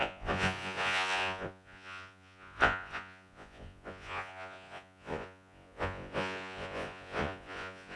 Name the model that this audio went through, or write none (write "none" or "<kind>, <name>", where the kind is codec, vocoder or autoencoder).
vocoder, Vocos